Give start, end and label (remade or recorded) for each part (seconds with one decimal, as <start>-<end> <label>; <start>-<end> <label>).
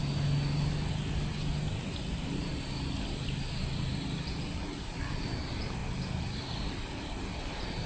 0.0-2.1 recorded; 2.1-2.5 remade; 2.5-4.2 recorded; 4.2-5.8 remade; 5.8-7.4 recorded; 7.4-7.9 remade